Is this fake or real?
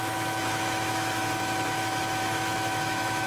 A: fake